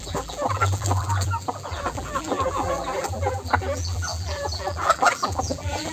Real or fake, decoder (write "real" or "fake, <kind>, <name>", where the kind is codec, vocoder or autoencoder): fake, vocoder, BigVGAN v2